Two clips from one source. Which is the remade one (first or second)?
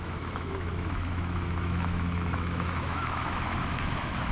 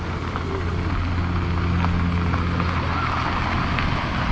first